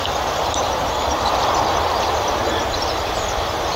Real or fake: real